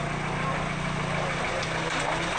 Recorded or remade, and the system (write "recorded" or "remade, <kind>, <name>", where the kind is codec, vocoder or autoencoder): recorded